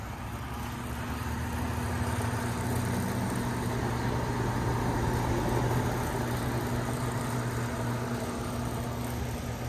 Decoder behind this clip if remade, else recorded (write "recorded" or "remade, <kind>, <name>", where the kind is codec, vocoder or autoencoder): recorded